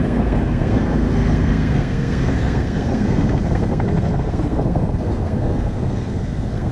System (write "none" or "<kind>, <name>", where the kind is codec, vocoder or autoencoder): codec, SNAC